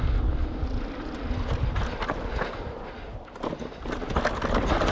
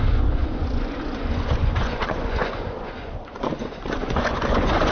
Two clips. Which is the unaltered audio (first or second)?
first